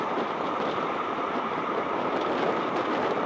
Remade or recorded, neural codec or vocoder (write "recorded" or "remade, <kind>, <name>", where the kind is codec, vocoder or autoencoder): remade, vocoder, BigVGAN v2